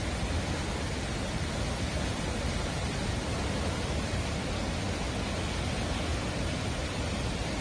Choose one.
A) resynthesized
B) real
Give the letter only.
B